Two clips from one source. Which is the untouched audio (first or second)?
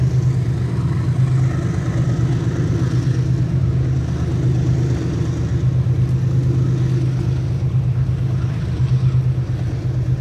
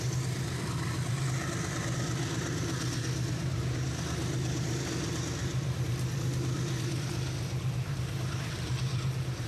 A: first